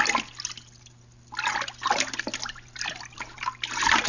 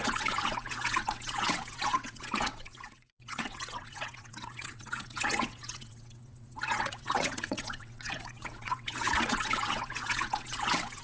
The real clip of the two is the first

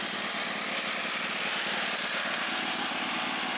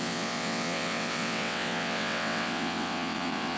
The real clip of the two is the first